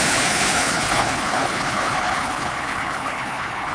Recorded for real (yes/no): no